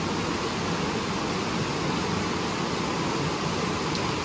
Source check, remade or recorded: recorded